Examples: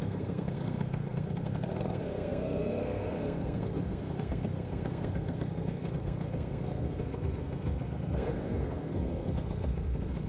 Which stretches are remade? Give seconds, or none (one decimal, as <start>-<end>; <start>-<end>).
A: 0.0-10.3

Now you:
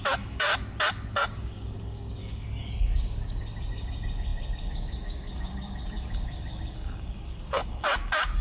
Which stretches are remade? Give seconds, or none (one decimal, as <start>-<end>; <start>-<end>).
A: 0.0-0.5; 1.1-8.4

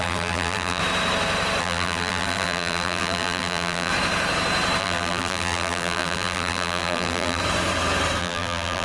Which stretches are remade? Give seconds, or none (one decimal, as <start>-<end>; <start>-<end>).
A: 0.0-0.8; 1.6-3.9; 4.8-7.4; 8.2-8.8

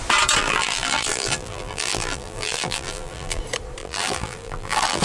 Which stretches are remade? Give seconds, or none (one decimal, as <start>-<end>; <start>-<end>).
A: 0.4-3.4; 3.8-5.0

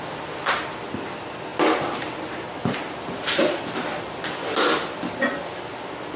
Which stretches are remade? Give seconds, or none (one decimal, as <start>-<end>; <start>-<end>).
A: none

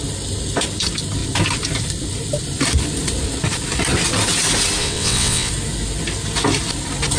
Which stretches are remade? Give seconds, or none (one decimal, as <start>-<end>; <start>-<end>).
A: 4.8-5.5